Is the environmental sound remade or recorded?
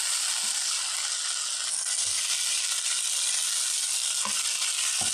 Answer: recorded